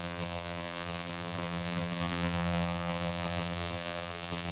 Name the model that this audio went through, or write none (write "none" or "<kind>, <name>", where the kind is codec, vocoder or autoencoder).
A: vocoder, BigVGAN v2